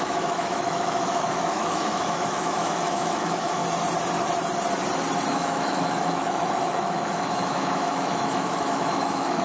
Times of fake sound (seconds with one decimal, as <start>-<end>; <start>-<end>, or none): 0.0-3.6; 5.3-9.4